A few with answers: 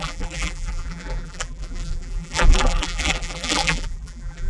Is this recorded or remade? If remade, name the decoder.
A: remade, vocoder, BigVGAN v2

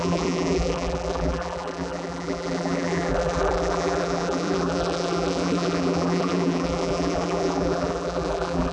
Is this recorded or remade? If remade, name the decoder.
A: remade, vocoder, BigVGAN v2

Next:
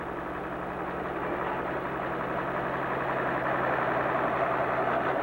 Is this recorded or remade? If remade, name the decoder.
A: recorded